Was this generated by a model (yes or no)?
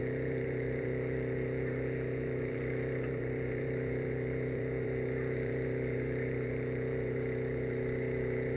yes